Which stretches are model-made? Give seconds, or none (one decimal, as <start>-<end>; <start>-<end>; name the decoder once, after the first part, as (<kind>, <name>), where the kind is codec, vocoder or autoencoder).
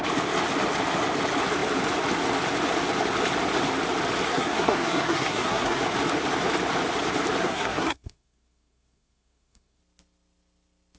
4.3-5.8 (codec, SNAC); 7.4-9.8